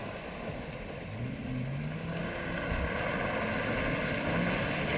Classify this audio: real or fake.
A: real